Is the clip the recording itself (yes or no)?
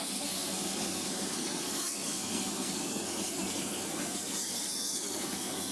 no